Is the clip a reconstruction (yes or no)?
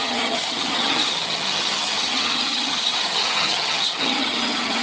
yes